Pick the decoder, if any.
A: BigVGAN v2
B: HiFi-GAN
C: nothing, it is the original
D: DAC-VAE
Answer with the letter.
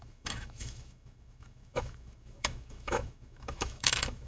D